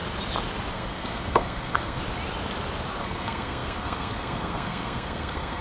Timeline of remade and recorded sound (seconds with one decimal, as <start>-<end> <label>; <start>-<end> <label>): 0.0-0.7 recorded; 0.7-2.0 remade; 2.0-3.0 recorded; 3.0-5.6 remade